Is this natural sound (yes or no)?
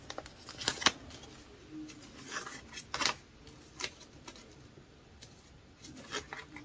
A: yes